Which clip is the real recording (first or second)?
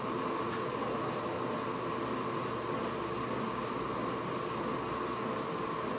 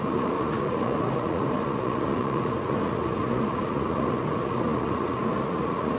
first